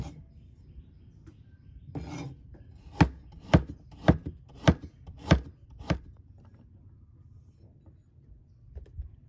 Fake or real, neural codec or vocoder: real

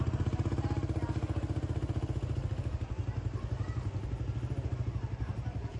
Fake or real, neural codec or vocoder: real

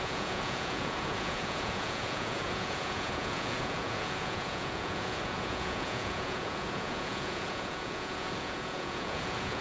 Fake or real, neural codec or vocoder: fake, vocoder, Vocos